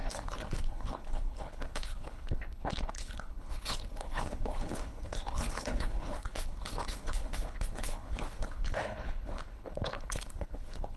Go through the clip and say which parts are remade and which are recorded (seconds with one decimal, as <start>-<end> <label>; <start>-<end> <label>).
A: 0.0-11.0 remade